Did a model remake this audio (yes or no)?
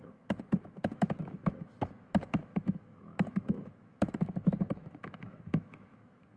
yes